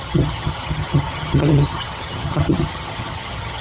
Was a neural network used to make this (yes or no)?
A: yes